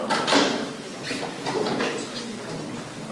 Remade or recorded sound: recorded